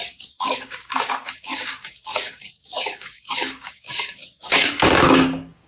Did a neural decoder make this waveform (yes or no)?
yes